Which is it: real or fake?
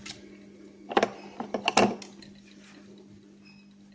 real